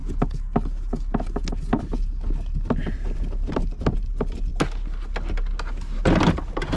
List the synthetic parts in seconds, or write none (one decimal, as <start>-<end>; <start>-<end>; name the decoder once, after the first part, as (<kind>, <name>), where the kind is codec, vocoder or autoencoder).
none